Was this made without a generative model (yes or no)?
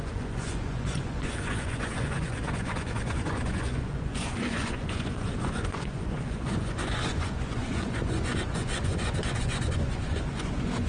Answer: no